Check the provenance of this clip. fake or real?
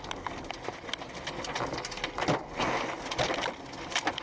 real